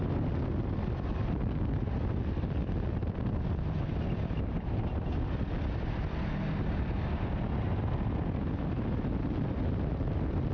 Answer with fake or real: real